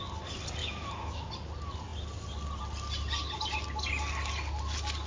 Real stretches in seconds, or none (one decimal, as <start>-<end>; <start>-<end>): 0.0-0.6; 1.3-5.1

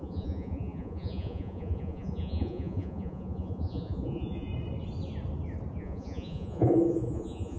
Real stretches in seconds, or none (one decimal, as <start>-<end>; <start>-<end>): 4.5-5.8

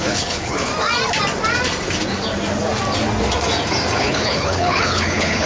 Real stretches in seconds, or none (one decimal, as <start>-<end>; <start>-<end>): 0.7-4.0

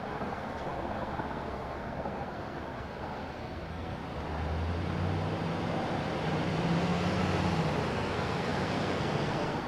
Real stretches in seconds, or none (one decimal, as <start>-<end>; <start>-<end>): 4.0-6.8; 7.2-7.9

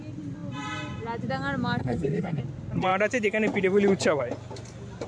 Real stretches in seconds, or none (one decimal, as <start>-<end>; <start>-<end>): 0.0-1.8; 2.4-5.1

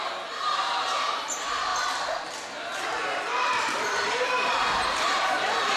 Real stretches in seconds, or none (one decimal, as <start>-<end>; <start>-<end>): 1.7-2.7

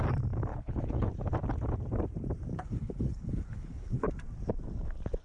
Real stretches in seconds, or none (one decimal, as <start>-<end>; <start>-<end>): 0.0-0.5; 1.1-2.5; 4.1-5.2

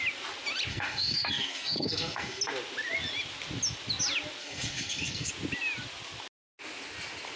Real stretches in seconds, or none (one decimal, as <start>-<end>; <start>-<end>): 0.0-0.7; 2.4-4.4; 5.3-7.4